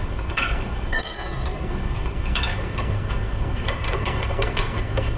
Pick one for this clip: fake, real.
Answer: fake